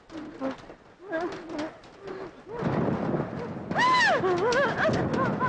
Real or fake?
real